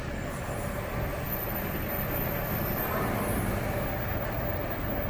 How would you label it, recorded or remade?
recorded